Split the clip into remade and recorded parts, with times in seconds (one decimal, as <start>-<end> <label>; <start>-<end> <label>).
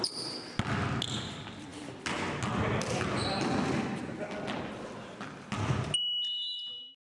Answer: 0.0-7.2 recorded